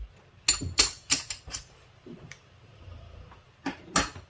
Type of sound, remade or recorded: recorded